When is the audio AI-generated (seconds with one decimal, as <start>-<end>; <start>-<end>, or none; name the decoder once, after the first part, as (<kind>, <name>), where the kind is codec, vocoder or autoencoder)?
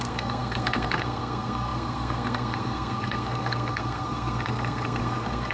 0.0-5.5 (codec, SNAC)